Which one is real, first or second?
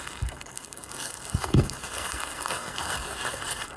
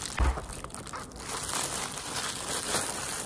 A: second